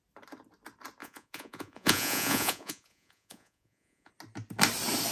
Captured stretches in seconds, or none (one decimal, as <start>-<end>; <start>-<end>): 0.0-1.0; 4.1-5.1